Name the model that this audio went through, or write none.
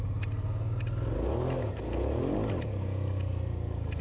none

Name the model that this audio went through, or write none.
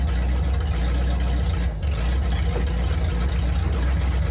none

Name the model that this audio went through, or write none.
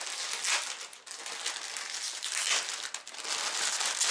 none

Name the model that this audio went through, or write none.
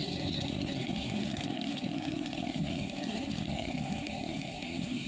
codec, SNAC